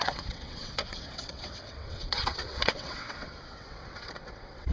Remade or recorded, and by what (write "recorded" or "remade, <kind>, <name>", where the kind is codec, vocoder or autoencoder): remade, vocoder, WaveNeXt